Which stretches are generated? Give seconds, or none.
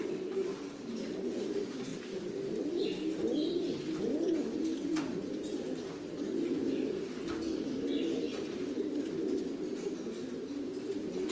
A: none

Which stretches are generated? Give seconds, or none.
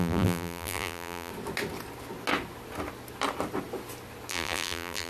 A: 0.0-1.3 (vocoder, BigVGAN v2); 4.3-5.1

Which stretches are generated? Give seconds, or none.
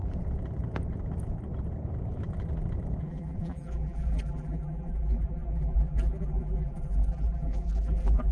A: 3.0-8.3 (vocoder, BigVGAN v2)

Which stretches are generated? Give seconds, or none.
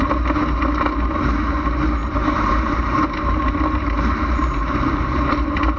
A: 2.0-5.8 (vocoder, BigVGAN v2)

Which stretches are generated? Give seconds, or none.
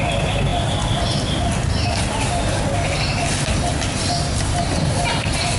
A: none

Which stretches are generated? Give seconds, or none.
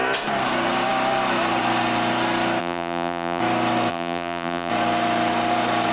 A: 2.6-3.4 (vocoder, BigVGAN v2); 3.9-4.7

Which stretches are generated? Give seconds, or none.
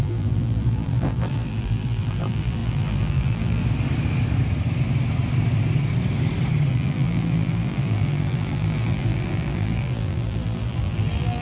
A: 0.0-3.6 (vocoder, BigVGAN v2); 6.7-11.4